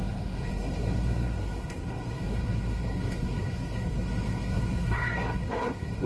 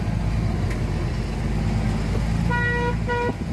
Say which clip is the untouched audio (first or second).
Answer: second